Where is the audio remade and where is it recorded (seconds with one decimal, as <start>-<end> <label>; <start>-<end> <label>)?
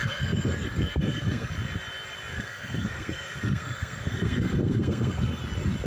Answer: 0.0-1.5 remade; 1.5-2.3 recorded; 2.3-5.4 remade; 5.4-5.9 recorded